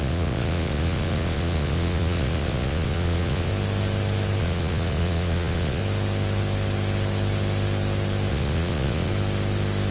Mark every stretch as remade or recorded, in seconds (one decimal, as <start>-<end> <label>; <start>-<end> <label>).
0.0-3.5 remade; 3.5-4.4 recorded; 4.4-5.8 remade; 5.8-8.3 recorded; 8.3-9.1 remade; 9.1-9.9 recorded